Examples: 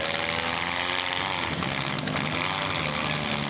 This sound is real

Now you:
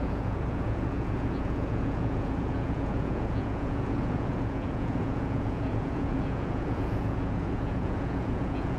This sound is fake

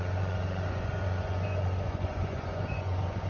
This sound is fake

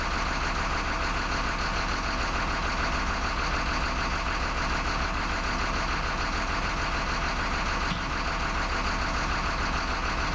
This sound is real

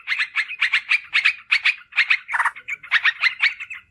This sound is real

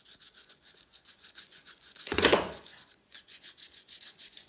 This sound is fake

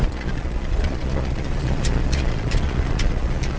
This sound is fake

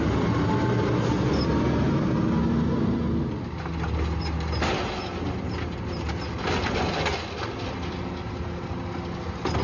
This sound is real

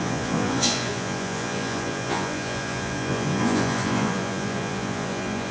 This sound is fake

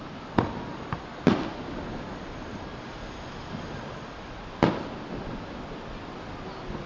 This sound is real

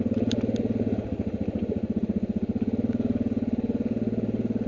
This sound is real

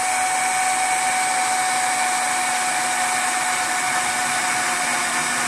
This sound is real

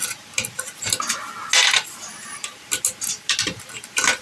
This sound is real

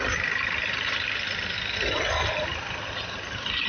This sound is real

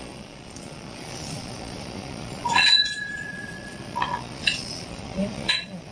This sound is fake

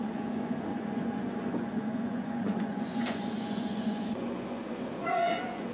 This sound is fake